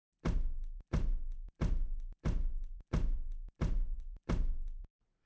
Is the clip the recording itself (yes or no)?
no